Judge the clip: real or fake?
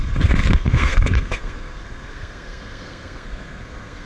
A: fake